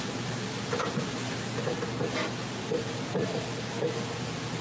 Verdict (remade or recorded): recorded